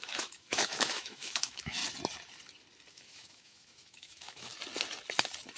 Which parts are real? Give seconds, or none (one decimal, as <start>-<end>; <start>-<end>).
1.8-2.9; 4.5-5.6